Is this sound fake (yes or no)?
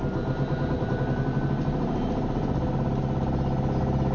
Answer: no